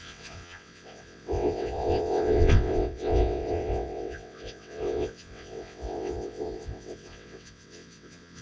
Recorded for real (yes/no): no